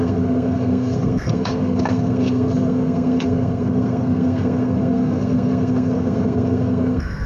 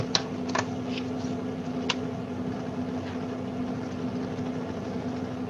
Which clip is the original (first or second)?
second